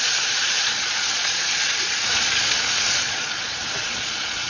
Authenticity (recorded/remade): remade